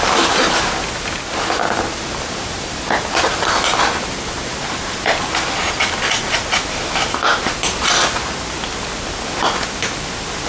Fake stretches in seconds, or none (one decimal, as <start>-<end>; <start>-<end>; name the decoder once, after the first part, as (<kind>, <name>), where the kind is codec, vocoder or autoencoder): none